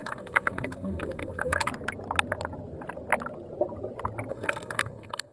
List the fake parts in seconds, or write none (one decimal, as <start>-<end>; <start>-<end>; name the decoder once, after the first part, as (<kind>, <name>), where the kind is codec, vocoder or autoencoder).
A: 0.0-1.7 (codec, SNAC); 4.3-5.3